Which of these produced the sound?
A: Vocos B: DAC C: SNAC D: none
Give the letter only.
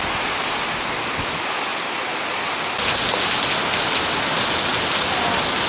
D